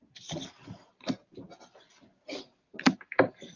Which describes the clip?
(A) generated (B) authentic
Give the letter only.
B